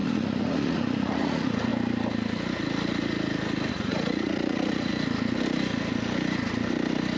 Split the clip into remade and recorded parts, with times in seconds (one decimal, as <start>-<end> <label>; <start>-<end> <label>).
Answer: 0.0-1.7 remade; 1.7-3.7 recorded; 3.7-4.9 remade; 4.9-7.2 recorded